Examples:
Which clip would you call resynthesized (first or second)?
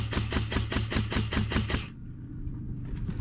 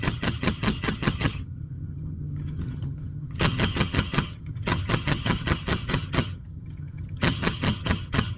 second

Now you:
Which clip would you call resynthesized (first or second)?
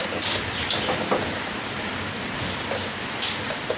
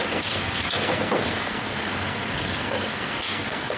second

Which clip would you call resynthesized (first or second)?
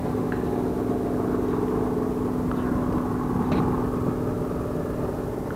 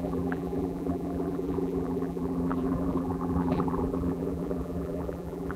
second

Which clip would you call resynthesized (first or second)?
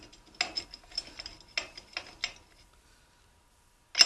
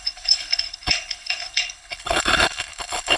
second